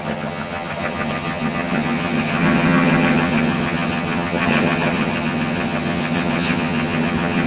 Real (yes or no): no